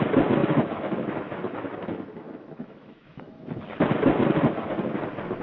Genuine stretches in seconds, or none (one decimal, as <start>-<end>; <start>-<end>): 0.0-0.4; 3.6-5.4